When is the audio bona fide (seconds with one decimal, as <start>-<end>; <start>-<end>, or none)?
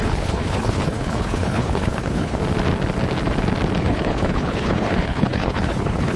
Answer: 2.4-3.8